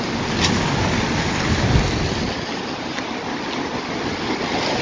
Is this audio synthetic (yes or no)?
no